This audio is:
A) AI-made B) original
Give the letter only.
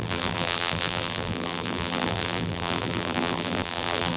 A